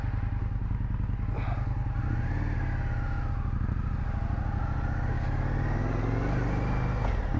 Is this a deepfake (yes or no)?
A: no